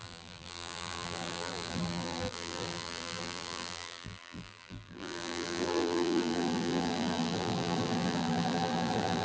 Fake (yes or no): yes